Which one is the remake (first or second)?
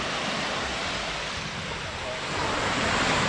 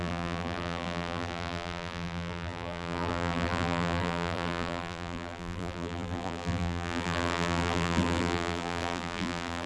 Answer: second